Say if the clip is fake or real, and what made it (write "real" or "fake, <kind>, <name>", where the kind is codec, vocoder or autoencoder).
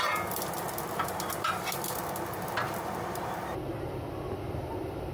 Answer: real